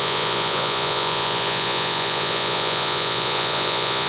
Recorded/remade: remade